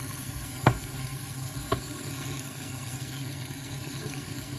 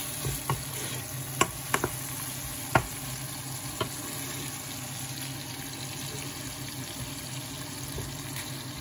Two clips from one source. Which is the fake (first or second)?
first